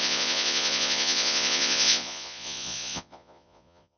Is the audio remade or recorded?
remade